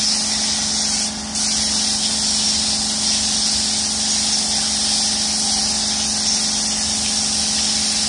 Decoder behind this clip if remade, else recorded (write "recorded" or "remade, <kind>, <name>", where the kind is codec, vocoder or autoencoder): recorded